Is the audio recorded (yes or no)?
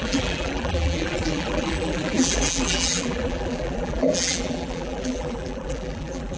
no